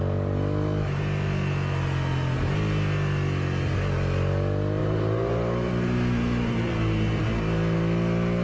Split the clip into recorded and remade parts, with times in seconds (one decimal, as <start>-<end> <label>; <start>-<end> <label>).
0.0-4.8 recorded; 4.8-7.2 remade; 7.2-8.4 recorded